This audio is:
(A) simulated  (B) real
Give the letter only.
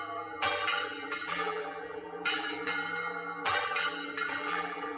A